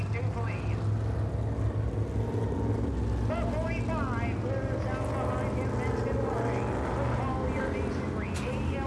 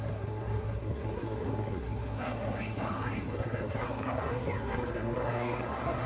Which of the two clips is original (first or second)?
first